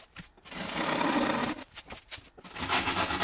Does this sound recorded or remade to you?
recorded